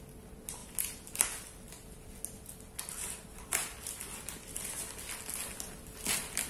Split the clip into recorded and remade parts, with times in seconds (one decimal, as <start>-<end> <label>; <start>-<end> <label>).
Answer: 0.0-6.5 recorded

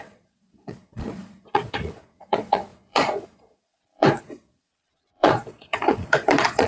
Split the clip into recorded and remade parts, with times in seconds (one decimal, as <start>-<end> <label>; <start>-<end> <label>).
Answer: 0.0-6.7 remade